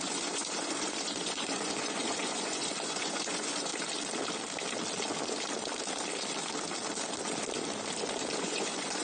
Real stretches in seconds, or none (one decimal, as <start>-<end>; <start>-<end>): 3.7-8.4